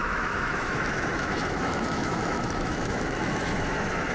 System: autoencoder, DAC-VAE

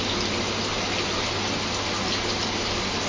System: none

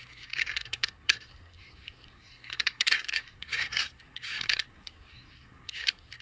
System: codec, SNAC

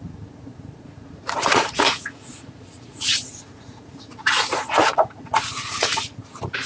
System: vocoder, Vocos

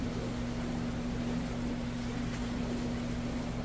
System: none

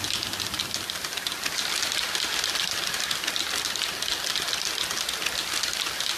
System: none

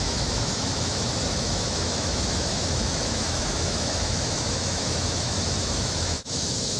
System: autoencoder, DAC-VAE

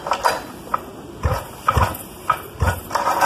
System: none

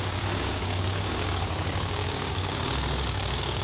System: codec, DAC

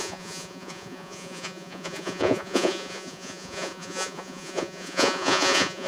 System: vocoder, Vocos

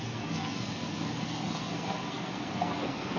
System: codec, SNAC